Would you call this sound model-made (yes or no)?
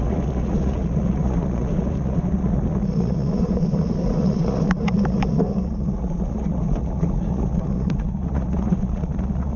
yes